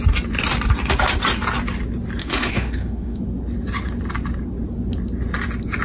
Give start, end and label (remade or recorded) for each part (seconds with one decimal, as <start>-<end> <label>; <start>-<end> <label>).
0.0-2.2 recorded; 2.2-3.2 remade; 3.2-5.8 recorded